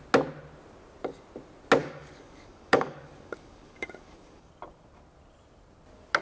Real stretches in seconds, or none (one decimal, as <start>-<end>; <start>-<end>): 0.0-1.8; 4.5-6.2

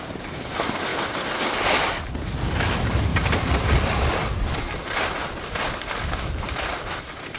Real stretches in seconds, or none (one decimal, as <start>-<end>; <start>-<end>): 0.0-0.9; 1.5-3.1; 7.0-7.4